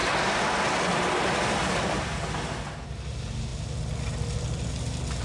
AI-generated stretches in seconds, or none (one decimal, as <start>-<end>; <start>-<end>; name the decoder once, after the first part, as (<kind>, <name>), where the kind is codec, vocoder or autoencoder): none